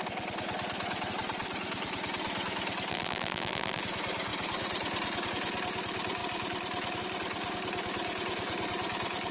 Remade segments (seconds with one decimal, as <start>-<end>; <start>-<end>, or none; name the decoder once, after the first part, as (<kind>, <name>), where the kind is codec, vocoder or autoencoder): 2.9-3.8 (vocoder, BigVGAN v2)